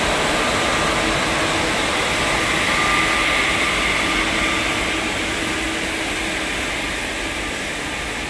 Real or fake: real